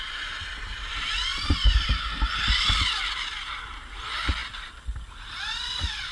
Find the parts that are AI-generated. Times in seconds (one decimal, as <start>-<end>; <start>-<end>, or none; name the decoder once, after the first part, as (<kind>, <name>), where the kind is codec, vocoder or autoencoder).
none